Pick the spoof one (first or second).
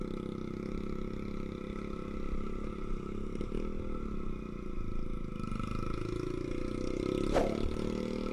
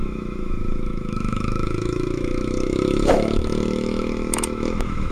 second